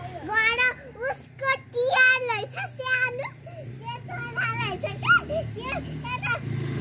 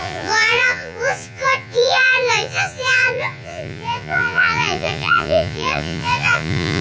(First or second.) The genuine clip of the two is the first